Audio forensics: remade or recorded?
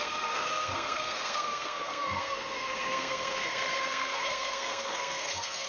remade